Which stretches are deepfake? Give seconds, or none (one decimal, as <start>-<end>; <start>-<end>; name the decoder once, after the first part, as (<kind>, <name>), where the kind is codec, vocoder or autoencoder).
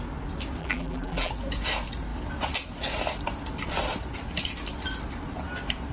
0.6-1.3 (vocoder, BigVGAN v2)